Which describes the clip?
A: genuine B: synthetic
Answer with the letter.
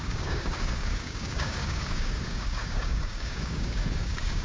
B